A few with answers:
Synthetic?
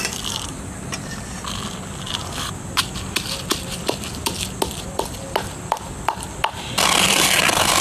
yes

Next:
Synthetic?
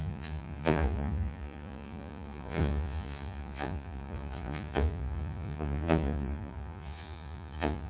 yes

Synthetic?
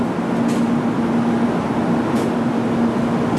no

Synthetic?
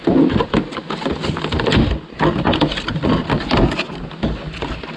no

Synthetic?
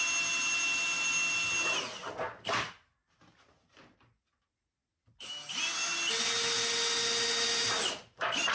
no